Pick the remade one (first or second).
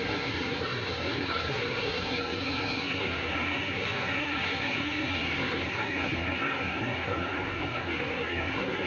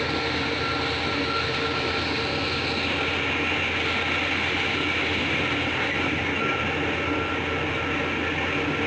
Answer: first